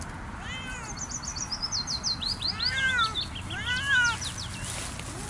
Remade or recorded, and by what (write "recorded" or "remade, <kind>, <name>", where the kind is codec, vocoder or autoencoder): recorded